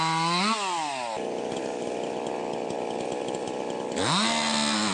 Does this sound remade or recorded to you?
recorded